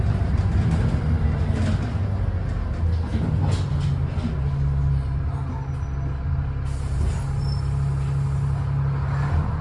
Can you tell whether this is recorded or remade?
recorded